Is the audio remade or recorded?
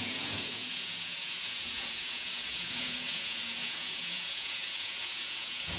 remade